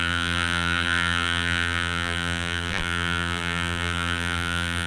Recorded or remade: remade